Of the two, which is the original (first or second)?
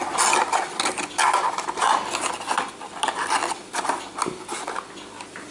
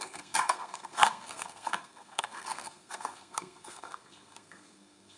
first